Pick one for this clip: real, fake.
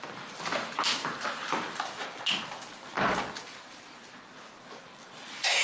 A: real